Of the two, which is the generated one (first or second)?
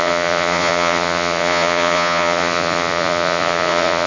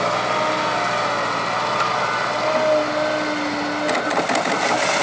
first